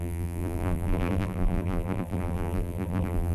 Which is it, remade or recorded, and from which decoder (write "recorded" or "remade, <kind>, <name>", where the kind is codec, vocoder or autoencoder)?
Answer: remade, vocoder, BigVGAN v2